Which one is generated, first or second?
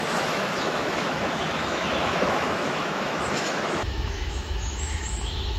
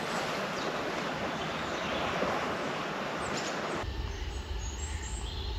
first